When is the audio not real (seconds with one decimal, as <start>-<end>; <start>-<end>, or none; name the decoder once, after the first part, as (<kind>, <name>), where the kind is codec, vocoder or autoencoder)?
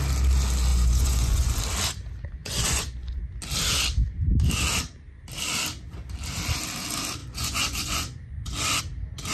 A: 0.7-1.6 (vocoder, Vocos); 2.4-3.2; 7.2-8.8